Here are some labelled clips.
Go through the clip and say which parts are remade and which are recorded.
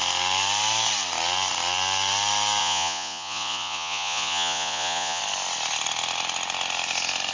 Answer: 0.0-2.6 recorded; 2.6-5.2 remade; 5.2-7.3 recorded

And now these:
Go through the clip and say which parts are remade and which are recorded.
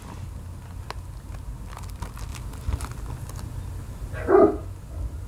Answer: 0.0-5.3 recorded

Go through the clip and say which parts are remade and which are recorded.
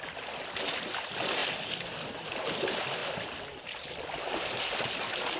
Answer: 0.0-5.4 recorded